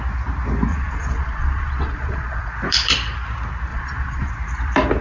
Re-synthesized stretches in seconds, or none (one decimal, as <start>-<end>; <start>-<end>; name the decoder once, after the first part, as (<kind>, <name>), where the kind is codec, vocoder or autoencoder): 0.7-2.5 (vocoder, Vocos); 3.7-4.3